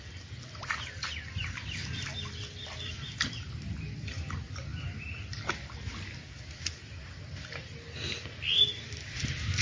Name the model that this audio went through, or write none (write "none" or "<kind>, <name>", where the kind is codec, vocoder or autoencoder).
none